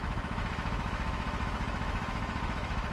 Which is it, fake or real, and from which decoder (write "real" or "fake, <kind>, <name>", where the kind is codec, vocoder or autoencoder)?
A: fake, autoencoder, DAC-VAE